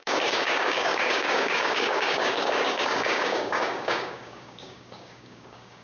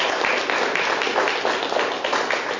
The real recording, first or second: second